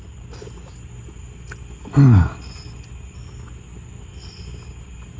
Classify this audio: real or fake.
real